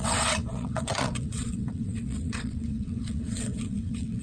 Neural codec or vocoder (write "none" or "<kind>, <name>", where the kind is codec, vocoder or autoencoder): vocoder, WaveNeXt